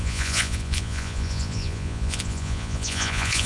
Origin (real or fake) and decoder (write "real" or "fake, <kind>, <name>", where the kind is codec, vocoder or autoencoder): fake, vocoder, Vocos